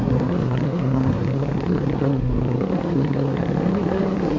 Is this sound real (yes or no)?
no